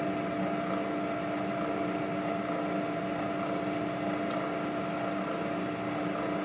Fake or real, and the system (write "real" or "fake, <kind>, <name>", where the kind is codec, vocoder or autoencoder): real